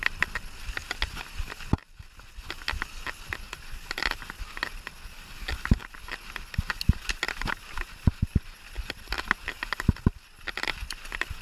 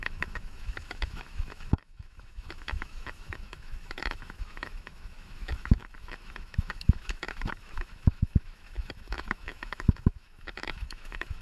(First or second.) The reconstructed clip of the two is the second